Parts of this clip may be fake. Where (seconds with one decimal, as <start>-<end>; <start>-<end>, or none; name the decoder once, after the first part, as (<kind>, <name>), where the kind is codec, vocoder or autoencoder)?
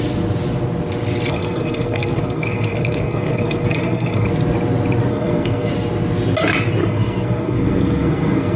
1.3-4.3 (codec, SNAC); 5.1-5.7; 6.8-8.6